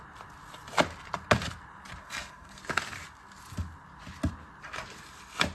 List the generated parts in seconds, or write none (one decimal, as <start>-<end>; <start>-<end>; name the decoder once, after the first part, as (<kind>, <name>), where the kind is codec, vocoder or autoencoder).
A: 2.0-2.6 (codec, SNAC)